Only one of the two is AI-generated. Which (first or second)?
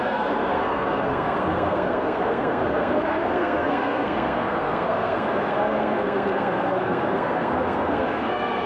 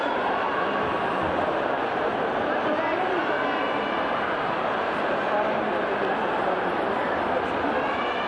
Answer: first